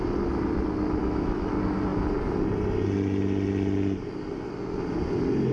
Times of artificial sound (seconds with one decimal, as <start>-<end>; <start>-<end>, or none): 1.0-1.5